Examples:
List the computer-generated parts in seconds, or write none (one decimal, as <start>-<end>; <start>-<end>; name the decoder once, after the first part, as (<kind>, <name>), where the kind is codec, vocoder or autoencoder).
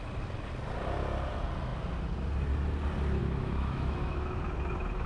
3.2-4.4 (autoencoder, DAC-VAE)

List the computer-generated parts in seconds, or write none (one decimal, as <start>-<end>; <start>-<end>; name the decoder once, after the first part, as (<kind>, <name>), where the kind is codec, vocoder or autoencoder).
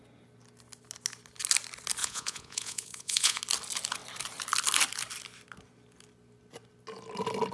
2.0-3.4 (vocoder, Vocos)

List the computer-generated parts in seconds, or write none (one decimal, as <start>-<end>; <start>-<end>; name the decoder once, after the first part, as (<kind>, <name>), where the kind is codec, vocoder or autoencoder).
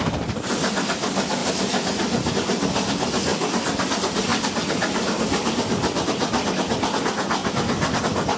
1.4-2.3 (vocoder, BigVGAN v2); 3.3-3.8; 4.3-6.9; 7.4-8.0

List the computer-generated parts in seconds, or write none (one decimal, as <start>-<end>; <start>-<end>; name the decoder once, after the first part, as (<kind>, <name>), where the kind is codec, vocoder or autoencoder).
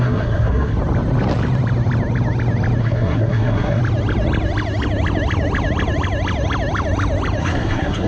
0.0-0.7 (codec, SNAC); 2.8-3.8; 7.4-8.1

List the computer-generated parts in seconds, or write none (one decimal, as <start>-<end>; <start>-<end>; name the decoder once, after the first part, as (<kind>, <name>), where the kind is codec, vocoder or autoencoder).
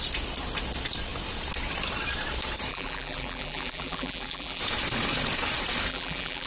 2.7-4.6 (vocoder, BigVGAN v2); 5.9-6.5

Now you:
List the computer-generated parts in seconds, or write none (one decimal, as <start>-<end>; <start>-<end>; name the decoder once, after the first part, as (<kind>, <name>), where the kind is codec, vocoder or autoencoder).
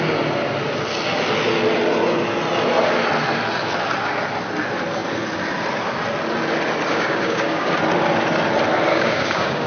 6.9-7.7 (codec, DAC); 8.9-9.7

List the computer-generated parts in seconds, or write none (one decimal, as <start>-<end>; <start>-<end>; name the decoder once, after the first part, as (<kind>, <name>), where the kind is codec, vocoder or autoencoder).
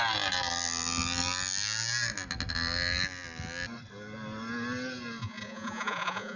5.2-6.4 (vocoder, Vocos)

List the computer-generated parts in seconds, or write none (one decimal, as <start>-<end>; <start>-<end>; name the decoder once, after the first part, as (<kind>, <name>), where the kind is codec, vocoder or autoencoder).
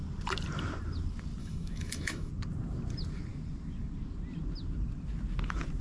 1.4-2.3 (autoencoder, DAC-VAE)